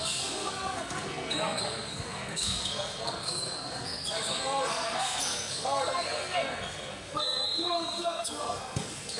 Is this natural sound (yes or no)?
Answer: no